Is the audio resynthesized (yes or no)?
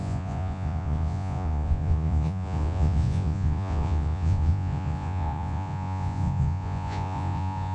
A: yes